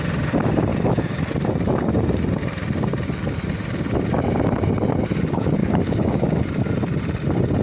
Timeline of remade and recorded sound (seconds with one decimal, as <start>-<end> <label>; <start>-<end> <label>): 0.0-0.7 recorded; 0.7-1.3 remade; 1.3-5.6 recorded; 5.6-6.4 remade; 6.4-7.6 recorded